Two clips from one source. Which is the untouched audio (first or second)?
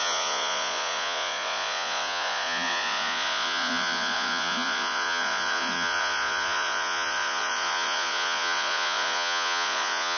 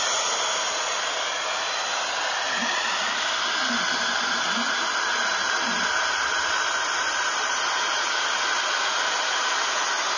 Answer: second